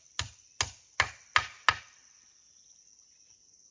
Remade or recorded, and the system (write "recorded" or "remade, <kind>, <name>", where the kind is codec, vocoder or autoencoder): recorded